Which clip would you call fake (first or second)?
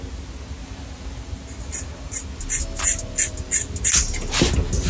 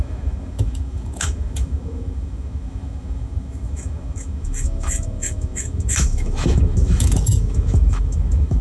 second